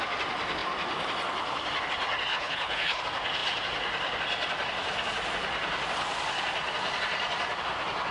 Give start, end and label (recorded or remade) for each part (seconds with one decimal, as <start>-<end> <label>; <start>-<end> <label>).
0.0-2.3 recorded; 2.3-3.0 remade; 3.0-8.1 recorded